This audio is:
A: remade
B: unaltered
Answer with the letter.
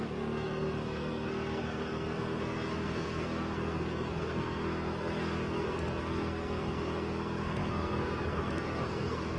A